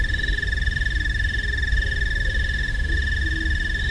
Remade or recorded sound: recorded